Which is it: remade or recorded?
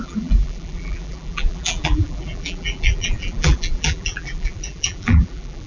remade